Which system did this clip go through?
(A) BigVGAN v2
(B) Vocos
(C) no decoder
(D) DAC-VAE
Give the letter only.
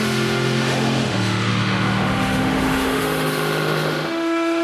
D